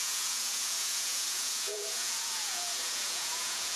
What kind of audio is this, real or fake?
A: fake